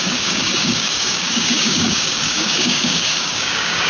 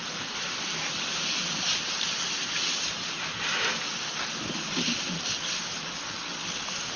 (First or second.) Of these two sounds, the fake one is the first